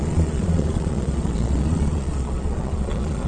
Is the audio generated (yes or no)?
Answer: yes